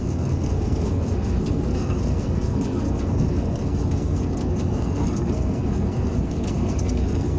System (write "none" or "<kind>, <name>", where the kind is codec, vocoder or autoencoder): codec, SNAC